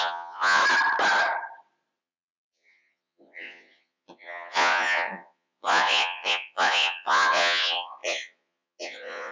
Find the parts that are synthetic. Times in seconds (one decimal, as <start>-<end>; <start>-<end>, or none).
0.0-0.6; 2.0-9.3